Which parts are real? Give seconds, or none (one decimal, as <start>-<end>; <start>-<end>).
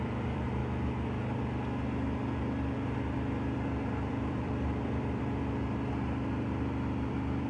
0.6-3.8; 5.4-7.1